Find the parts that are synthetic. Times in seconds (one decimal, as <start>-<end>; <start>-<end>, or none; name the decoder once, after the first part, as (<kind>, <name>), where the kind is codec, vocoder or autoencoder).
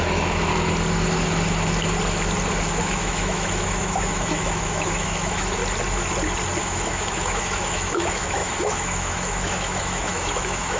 0.0-0.5 (autoencoder, DAC-VAE); 2.8-5.6; 6.6-10.8